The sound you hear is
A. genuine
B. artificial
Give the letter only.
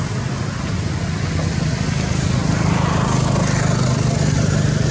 A